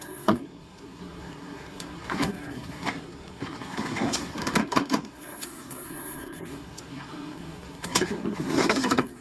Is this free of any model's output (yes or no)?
no